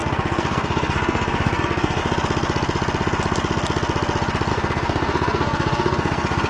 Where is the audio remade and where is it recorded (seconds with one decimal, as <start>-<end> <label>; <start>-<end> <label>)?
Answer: 0.0-2.0 remade; 2.0-4.5 recorded; 4.5-6.5 remade